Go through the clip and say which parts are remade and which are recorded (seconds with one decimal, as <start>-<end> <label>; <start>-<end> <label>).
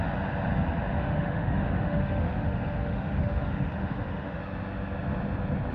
0.0-1.0 recorded; 1.0-4.4 remade; 4.4-5.7 recorded